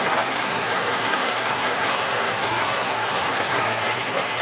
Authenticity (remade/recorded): remade